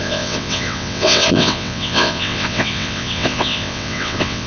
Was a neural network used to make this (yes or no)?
yes